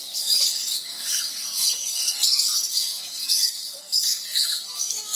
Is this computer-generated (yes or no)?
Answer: yes